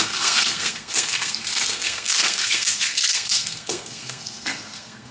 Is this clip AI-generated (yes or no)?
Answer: yes